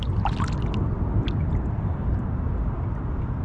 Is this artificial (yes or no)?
no